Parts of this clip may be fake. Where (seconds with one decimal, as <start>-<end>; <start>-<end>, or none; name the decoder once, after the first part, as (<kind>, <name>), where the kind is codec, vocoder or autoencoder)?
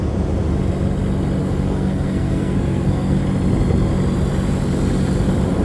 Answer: 1.4-3.2 (codec, SNAC)